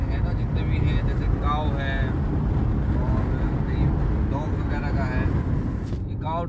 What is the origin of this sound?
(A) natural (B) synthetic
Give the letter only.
A